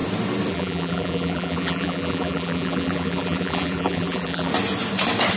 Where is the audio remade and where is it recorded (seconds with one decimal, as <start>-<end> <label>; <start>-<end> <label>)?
0.0-0.5 recorded; 0.5-4.5 remade; 4.5-5.4 recorded